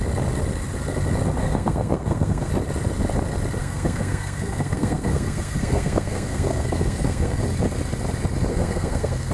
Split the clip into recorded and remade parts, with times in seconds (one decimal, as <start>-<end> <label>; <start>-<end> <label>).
0.0-1.4 recorded; 1.4-2.5 remade; 2.5-3.6 recorded; 3.6-7.4 remade; 7.4-8.5 recorded; 8.5-9.3 remade